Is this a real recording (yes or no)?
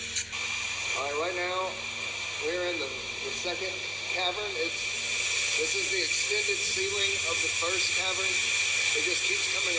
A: yes